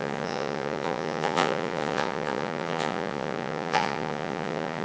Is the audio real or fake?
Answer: fake